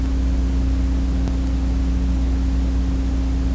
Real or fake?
real